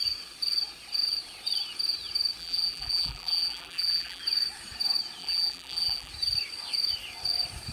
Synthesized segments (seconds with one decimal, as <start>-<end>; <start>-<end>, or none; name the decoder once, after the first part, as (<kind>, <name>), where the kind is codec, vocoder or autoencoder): 2.4-4.2 (vocoder, BigVGAN v2); 5.2-6.1